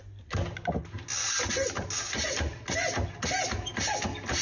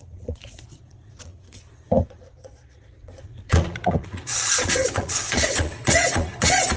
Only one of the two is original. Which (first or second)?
first